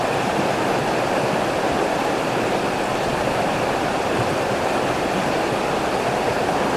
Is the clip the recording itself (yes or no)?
yes